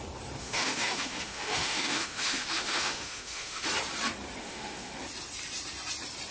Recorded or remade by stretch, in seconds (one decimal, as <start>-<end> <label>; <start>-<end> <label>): 0.0-0.4 recorded; 0.4-3.7 remade; 3.7-4.4 recorded; 4.4-4.9 remade; 4.9-6.3 recorded